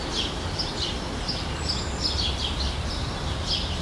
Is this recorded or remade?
recorded